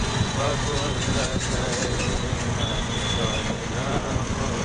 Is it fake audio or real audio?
fake